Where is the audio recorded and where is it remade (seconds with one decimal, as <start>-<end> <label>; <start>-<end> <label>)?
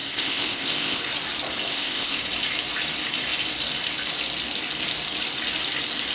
0.0-1.0 remade; 1.0-1.7 recorded; 1.7-2.2 remade; 2.2-6.1 recorded